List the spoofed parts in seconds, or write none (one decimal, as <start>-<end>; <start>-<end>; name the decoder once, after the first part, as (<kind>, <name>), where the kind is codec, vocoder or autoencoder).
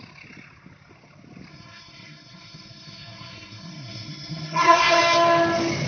1.5-5.0 (codec, SNAC)